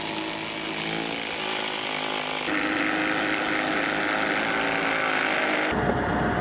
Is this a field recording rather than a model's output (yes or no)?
yes